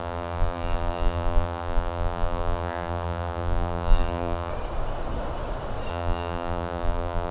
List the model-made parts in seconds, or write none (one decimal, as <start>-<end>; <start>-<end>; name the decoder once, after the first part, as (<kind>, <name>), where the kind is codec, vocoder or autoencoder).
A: 0.0-4.5 (vocoder, BigVGAN v2); 5.9-7.3